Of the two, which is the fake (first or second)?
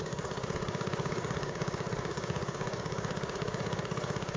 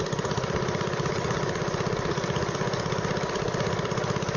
first